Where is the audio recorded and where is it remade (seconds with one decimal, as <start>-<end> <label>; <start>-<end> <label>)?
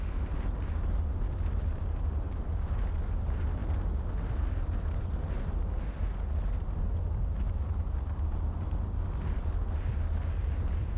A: 0.0-11.0 recorded